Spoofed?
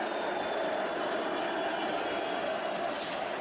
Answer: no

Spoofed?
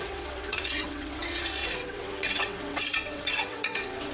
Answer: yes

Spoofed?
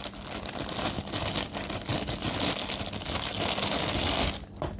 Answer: no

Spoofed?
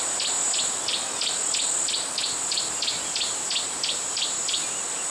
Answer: no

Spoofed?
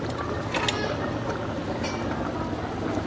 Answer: no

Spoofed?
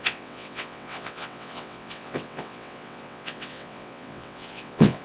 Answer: yes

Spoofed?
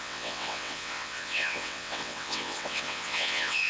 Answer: yes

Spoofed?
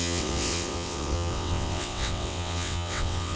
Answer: yes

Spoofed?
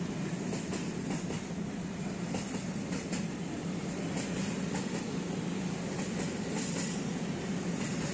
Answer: no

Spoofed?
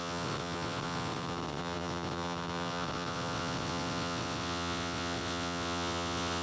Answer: yes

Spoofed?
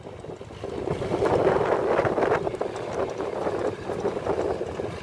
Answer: no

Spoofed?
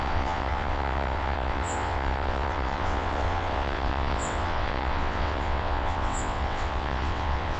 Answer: yes